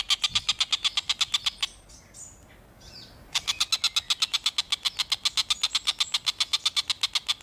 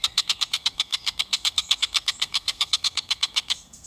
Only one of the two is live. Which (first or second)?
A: first